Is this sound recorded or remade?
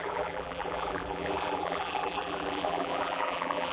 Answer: remade